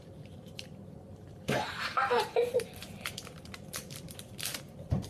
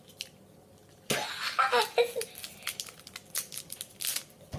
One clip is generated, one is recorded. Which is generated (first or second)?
first